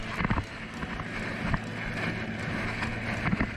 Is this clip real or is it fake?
real